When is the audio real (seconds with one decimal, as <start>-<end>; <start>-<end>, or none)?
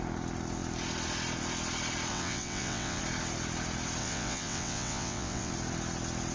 0.0-2.1; 3.0-4.0; 5.5-6.3